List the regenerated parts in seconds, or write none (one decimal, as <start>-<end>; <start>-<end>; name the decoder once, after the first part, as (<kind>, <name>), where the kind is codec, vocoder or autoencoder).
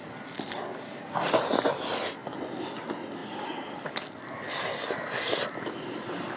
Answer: none